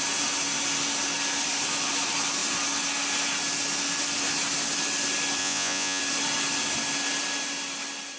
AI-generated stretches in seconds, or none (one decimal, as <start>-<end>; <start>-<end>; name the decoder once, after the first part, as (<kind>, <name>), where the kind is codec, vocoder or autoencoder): 5.4-6.0 (vocoder, Vocos)